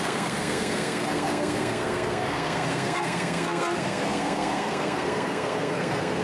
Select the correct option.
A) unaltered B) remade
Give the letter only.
B